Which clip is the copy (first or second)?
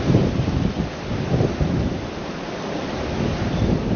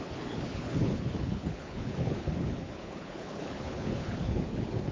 second